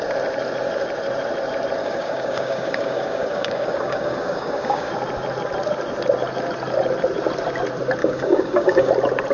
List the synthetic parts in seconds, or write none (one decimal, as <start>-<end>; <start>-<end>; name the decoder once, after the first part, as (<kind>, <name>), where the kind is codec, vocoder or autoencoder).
1.8-4.9 (codec, DAC); 8.0-8.9